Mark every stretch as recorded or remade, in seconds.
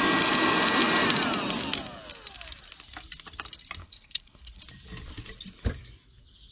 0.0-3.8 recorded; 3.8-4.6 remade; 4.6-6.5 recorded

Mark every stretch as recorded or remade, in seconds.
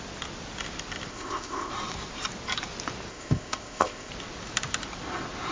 0.0-1.1 recorded; 1.1-1.7 remade; 1.7-3.1 recorded; 3.1-4.1 remade; 4.1-5.5 recorded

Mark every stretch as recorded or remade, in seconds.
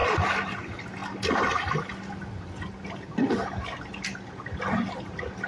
0.0-5.5 recorded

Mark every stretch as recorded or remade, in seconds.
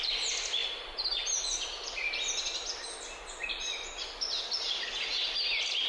0.0-5.9 recorded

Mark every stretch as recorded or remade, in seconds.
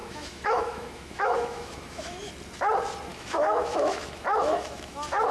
0.0-2.3 remade; 2.3-3.1 recorded; 3.1-5.3 remade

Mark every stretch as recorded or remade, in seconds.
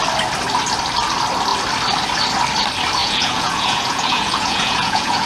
0.0-3.0 recorded; 3.0-5.3 remade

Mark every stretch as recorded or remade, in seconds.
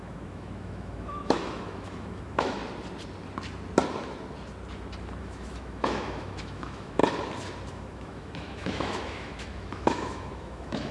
0.0-2.6 remade; 2.6-5.2 recorded; 5.2-7.0 remade; 7.0-7.7 recorded; 7.7-10.9 remade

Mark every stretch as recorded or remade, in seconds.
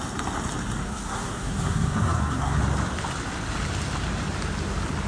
0.0-0.8 recorded; 0.8-2.6 remade; 2.6-5.1 recorded